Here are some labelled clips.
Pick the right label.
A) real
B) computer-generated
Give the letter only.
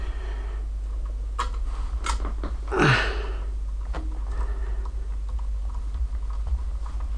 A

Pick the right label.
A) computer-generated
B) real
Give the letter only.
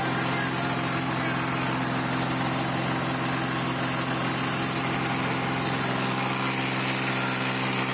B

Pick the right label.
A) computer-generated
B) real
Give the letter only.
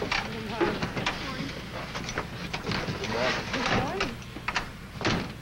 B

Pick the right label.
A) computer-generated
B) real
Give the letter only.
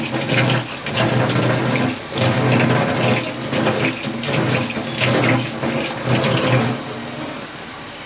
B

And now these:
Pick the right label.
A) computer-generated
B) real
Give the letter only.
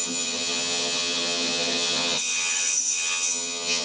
A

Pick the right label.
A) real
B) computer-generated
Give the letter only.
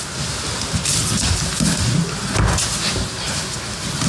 A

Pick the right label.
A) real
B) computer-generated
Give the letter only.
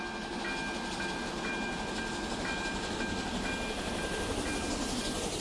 A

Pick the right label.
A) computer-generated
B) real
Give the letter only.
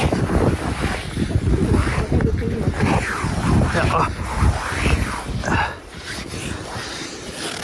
B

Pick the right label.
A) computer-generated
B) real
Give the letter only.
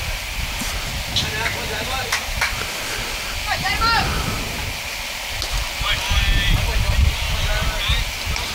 B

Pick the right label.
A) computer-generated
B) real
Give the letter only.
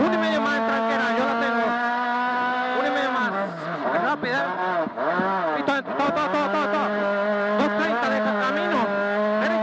B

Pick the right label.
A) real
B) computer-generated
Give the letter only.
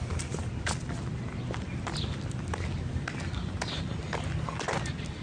A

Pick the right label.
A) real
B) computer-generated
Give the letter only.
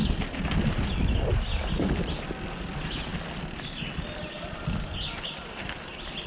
A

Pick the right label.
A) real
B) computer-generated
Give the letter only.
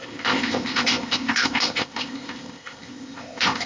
B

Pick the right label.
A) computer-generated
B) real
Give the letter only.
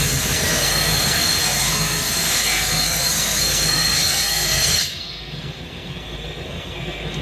A